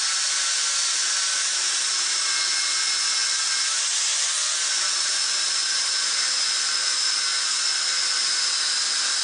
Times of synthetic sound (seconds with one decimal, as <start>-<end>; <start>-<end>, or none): none